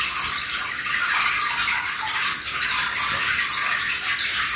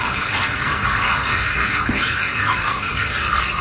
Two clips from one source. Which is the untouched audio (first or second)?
first